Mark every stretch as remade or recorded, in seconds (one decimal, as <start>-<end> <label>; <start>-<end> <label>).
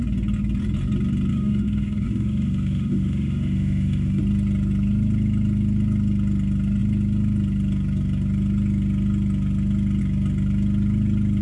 0.0-1.3 recorded; 1.3-4.2 remade; 4.2-11.4 recorded